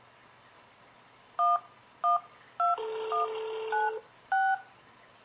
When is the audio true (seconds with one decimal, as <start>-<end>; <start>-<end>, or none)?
0.0-5.2